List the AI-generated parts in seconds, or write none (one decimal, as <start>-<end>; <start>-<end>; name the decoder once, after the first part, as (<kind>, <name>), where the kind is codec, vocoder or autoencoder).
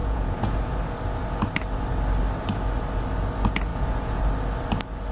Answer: 0.0-0.7 (vocoder, Vocos); 3.7-4.2